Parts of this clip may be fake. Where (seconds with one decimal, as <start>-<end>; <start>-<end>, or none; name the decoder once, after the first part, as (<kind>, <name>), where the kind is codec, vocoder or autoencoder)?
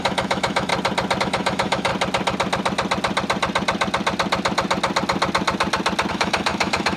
0.0-0.7 (autoencoder, DAC-VAE); 1.2-1.9; 6.1-7.0